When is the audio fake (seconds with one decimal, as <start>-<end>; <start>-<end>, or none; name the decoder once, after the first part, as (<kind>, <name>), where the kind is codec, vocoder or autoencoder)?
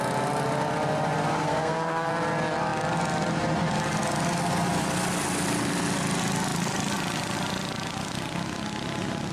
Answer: 1.4-2.1 (codec, SNAC)